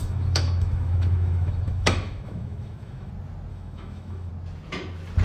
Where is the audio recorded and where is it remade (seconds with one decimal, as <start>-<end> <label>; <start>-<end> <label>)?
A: 0.0-3.1 remade; 3.1-3.5 recorded; 3.5-4.3 remade; 4.3-5.2 recorded